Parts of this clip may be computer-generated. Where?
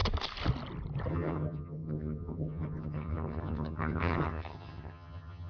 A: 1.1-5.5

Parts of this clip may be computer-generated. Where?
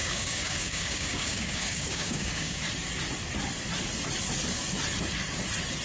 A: 0.0-2.6